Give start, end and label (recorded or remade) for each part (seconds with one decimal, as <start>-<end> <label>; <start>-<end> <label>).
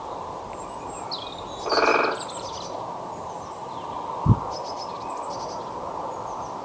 0.0-6.6 recorded